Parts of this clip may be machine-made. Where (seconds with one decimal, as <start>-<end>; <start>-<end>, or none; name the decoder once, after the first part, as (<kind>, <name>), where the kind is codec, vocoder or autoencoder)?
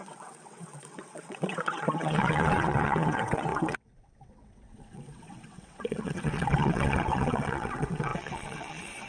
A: 0.0-9.1 (vocoder, WaveNeXt)